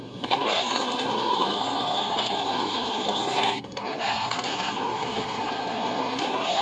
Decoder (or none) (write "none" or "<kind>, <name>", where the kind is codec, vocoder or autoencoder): codec, SNAC